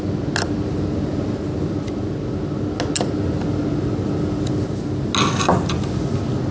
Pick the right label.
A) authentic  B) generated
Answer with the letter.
A